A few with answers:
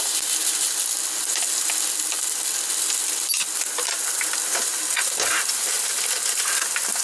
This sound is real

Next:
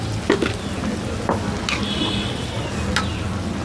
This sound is real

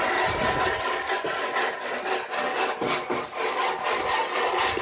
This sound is real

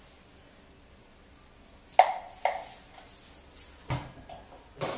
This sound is real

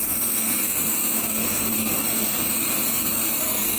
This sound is fake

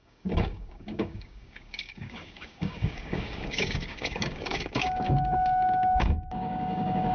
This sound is fake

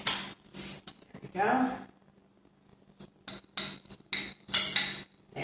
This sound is real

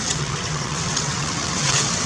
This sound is fake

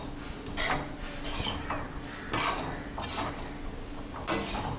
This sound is real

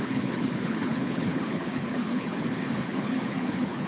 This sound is fake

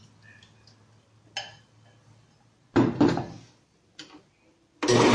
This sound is real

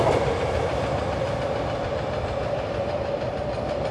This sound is real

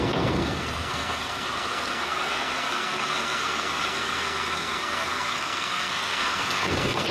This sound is fake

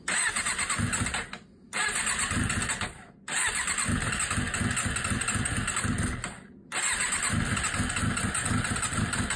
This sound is real